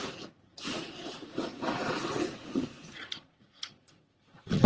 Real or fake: fake